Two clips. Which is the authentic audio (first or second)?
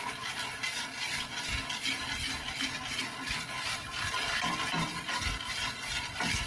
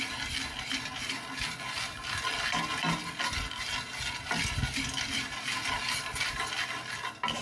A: second